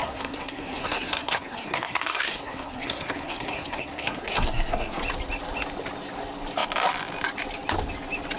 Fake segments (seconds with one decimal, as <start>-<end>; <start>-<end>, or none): 0.0-5.0